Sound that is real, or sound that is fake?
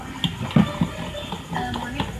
real